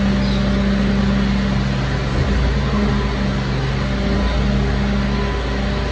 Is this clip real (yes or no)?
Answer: yes